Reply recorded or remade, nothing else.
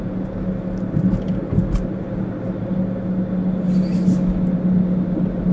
recorded